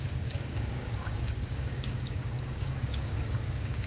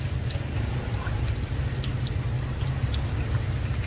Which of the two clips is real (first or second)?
second